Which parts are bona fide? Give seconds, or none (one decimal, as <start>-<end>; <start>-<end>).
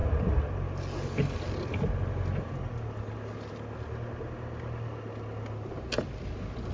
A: 0.0-6.7